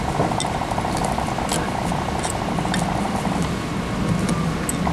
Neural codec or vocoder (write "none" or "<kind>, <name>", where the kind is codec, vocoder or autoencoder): none